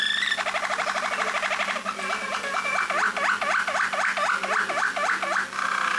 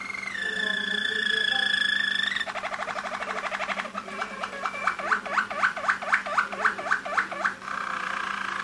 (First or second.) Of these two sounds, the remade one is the second